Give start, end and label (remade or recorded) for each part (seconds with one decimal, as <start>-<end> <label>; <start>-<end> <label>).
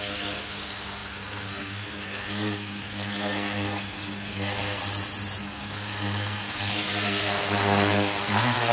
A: 0.0-4.8 remade; 4.8-5.4 recorded; 5.4-8.7 remade